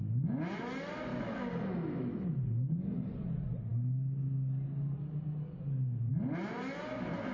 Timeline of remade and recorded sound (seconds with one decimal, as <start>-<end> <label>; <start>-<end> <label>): 0.0-1.1 recorded; 1.1-2.3 remade; 2.3-7.3 recorded